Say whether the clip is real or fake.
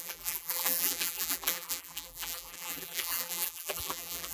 fake